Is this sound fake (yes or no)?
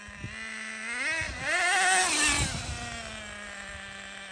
no